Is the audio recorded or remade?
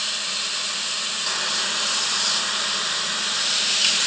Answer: recorded